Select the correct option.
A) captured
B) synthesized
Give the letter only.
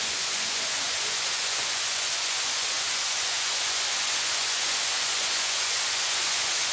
B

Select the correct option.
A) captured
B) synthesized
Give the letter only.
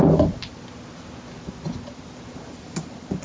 A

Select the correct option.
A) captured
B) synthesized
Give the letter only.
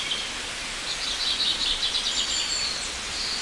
A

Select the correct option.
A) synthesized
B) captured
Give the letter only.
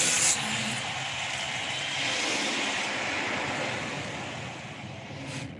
B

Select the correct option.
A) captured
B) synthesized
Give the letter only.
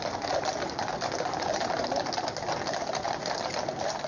A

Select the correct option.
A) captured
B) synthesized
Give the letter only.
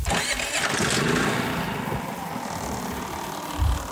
A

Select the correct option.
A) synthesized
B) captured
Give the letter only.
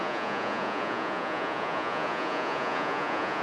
A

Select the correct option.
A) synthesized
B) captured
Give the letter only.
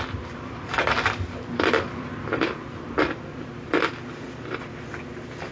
B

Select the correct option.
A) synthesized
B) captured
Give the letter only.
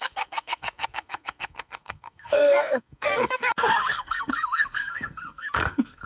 A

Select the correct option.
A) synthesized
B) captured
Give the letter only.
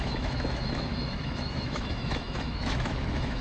A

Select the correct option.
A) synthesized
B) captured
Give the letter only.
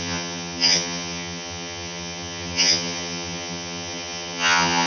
A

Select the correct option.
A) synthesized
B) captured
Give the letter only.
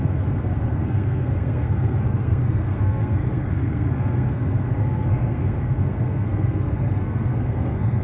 A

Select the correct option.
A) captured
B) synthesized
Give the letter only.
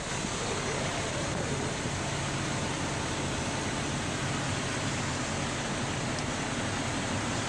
A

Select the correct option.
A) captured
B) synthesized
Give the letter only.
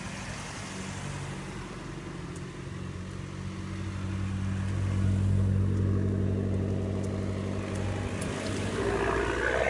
A